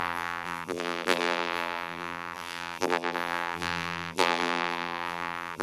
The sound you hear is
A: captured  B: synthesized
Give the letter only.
B